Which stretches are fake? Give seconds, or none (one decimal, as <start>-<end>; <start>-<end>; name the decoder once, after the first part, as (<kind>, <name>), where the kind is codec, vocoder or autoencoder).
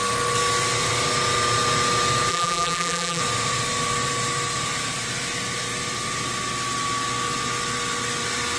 2.3-3.2 (vocoder, BigVGAN v2)